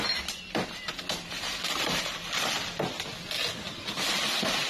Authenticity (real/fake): real